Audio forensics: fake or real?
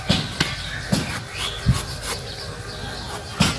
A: real